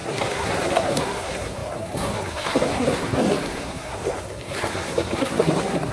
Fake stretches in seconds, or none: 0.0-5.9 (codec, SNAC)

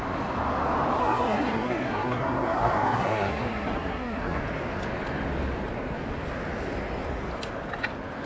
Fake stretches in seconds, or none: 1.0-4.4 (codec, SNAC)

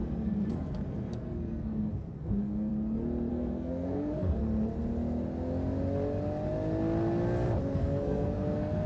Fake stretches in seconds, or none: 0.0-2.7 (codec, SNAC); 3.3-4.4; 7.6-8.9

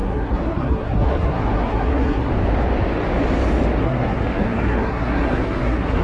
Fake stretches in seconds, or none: 0.0-2.3 (codec, SNAC); 3.8-6.0